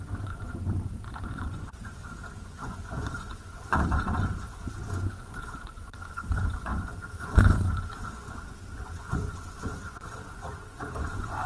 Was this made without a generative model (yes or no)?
no